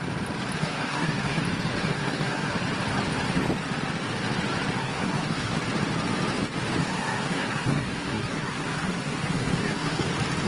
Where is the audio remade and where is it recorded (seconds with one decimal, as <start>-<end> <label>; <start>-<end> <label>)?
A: 0.0-0.6 recorded; 0.6-1.4 remade; 1.4-1.8 recorded; 1.8-2.5 remade; 2.5-4.8 recorded; 4.8-5.6 remade; 5.6-6.9 recorded; 6.9-10.1 remade; 10.1-10.5 recorded